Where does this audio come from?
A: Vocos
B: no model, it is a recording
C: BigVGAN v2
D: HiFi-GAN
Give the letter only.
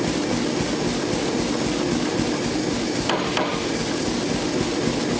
B